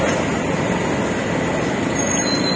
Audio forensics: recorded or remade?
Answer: recorded